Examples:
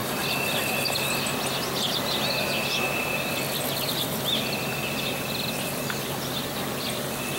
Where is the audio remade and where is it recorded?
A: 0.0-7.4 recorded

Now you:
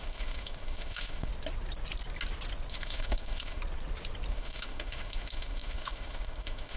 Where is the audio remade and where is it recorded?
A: 0.0-1.3 remade; 1.3-2.7 recorded; 2.7-3.6 remade; 3.6-4.3 recorded; 4.3-6.8 remade

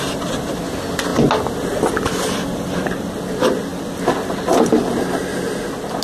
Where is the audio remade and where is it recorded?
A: 0.0-6.0 recorded

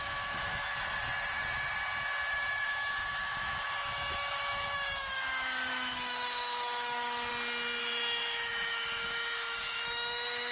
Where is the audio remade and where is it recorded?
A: 0.0-0.7 remade; 0.7-2.3 recorded; 2.3-7.3 remade; 7.3-7.8 recorded; 7.8-10.5 remade

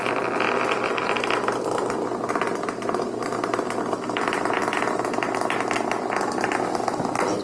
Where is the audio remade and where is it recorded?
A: 0.0-7.4 recorded

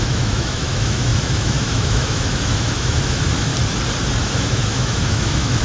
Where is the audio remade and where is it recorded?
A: 0.0-3.5 remade; 3.5-4.2 recorded; 4.2-5.6 remade